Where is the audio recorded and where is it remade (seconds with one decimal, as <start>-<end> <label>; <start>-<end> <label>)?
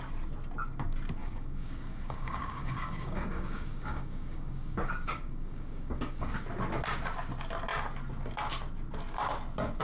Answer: 0.0-1.2 recorded; 1.2-6.3 remade; 6.3-9.8 recorded